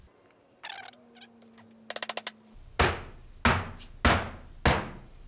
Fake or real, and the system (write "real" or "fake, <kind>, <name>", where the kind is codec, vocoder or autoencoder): real